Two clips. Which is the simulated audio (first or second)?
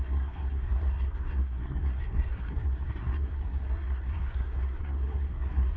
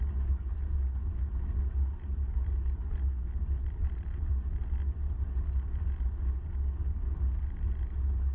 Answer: first